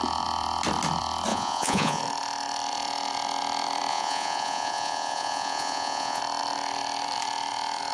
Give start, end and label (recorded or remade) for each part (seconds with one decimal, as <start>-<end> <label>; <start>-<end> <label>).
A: 0.0-1.3 recorded; 1.3-2.0 remade; 2.0-3.9 recorded; 3.9-6.2 remade; 6.2-7.9 recorded